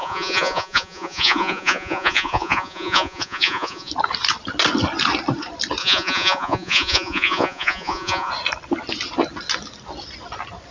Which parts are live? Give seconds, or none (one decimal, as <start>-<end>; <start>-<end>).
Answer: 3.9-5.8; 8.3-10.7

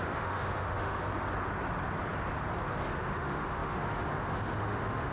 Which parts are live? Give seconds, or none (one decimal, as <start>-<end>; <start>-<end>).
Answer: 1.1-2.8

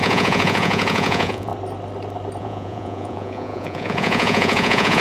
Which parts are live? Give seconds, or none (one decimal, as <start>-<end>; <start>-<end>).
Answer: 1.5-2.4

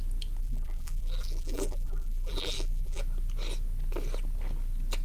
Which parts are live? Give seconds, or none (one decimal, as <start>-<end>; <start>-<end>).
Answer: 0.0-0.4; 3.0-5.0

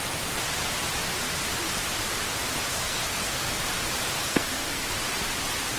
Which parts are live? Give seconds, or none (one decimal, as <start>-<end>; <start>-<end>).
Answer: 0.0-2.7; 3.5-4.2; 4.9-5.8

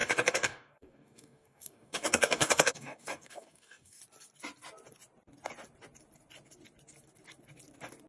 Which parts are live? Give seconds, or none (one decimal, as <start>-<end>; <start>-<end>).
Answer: 4.0-8.1